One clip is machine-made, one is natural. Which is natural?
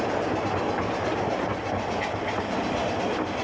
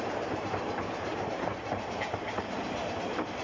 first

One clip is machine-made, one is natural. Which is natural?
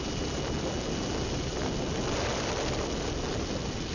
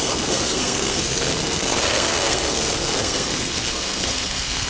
first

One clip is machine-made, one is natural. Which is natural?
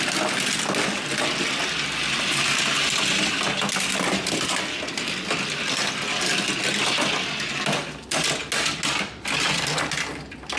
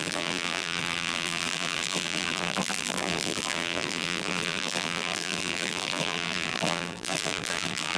first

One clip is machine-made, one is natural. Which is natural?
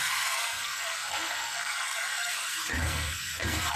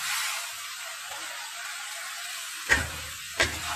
second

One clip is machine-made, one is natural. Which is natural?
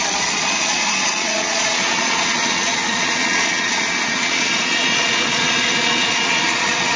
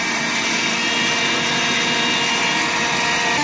second